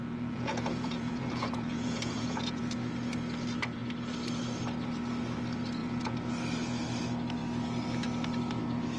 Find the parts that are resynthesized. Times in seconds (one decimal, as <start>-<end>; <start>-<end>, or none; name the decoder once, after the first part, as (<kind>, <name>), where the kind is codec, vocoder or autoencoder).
0.0-2.6 (vocoder, Vocos); 5.8-6.3